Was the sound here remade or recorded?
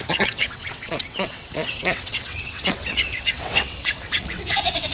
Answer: remade